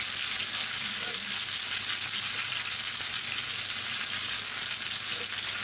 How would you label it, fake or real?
real